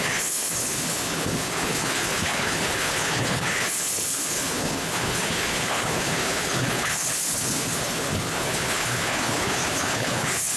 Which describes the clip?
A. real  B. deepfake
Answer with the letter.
B